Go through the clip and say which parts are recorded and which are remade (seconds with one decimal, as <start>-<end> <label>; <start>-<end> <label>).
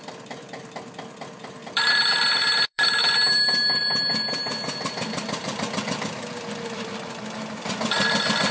0.0-8.5 remade